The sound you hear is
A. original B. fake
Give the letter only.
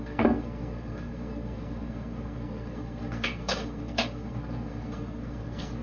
B